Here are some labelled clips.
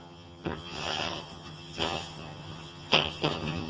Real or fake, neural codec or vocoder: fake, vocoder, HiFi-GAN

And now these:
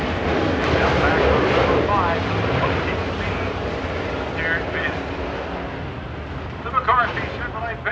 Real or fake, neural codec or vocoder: real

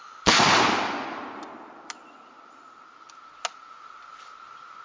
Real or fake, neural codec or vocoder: real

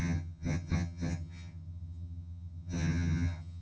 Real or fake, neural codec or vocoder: fake, vocoder, HiFi-GAN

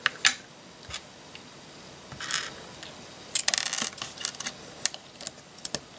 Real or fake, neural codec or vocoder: real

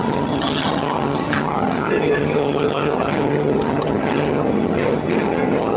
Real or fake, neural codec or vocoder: fake, vocoder, HiFi-GAN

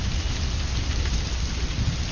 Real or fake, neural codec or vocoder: real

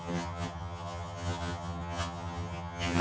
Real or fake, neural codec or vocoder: fake, vocoder, HiFi-GAN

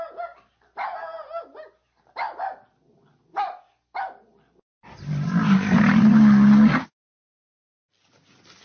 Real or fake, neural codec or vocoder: real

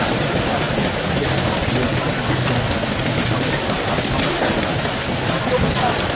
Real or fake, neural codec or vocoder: real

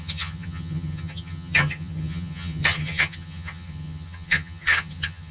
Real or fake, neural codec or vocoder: fake, vocoder, HiFi-GAN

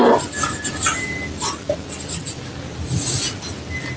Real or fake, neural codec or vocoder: real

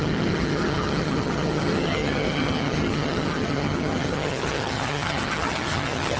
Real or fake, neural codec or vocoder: fake, vocoder, HiFi-GAN